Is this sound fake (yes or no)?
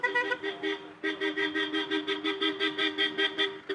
no